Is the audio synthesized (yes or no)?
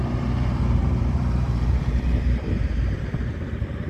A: yes